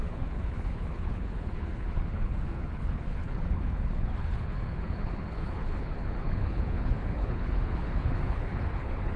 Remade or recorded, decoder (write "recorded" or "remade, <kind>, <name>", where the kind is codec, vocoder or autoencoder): remade, codec, HILCodec